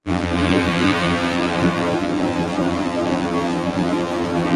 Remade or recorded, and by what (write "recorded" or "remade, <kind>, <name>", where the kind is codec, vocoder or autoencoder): remade, vocoder, BigVGAN v2